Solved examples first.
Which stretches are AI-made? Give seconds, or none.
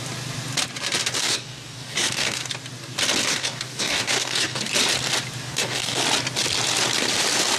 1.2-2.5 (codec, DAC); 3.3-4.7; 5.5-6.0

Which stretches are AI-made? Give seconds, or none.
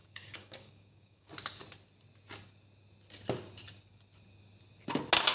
0.0-1.3 (codec, DAC)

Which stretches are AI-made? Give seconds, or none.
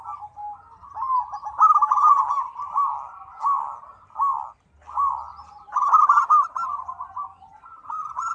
none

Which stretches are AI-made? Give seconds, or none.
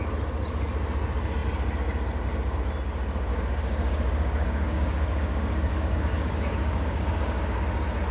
3.3-7.6 (codec, DAC)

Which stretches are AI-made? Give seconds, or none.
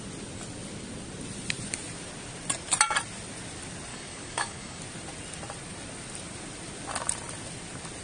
3.9-4.8 (codec, DAC)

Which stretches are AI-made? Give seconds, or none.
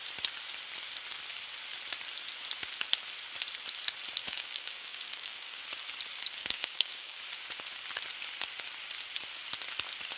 4.2-5.6 (codec, DAC); 6.4-7.2